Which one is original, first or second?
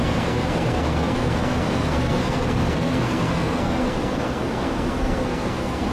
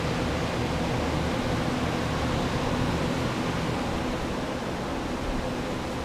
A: second